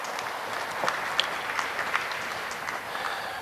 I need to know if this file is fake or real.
real